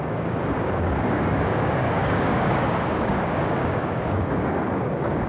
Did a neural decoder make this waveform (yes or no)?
yes